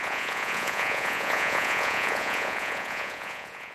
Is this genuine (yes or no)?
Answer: no